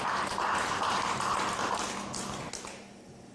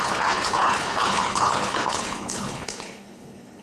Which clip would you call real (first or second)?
first